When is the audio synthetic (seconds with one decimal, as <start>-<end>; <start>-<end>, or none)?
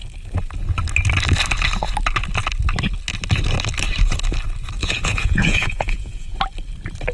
4.8-6.4